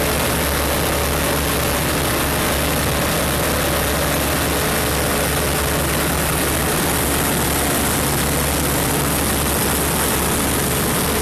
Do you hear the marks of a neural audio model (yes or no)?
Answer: no